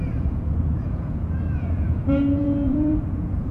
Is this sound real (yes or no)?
no